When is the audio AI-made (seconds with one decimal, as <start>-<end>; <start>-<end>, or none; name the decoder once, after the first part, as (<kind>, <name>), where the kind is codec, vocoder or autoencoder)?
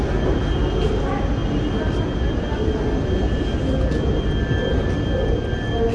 none